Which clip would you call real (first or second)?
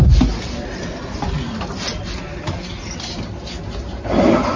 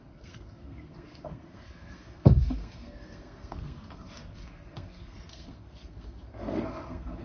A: first